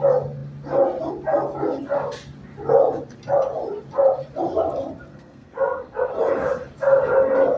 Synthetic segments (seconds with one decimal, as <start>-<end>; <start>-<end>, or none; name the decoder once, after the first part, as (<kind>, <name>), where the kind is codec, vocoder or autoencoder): 5.1-6.1 (codec, SNAC)